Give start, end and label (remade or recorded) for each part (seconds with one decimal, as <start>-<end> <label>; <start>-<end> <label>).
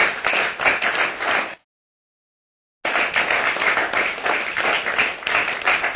0.0-1.7 recorded; 1.7-2.4 remade; 2.4-6.0 recorded